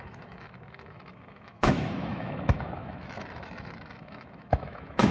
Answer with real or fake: fake